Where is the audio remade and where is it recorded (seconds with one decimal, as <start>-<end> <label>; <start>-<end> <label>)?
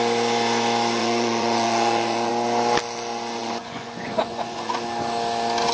0.0-1.0 recorded; 1.0-2.3 remade; 2.3-3.4 recorded; 3.4-4.7 remade; 4.7-5.7 recorded